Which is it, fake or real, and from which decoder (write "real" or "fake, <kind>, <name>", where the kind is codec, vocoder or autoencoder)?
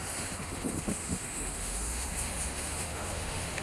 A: fake, autoencoder, DAC-VAE